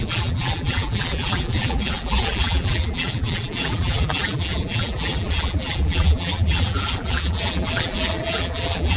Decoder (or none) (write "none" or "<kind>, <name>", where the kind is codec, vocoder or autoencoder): vocoder, BigVGAN v2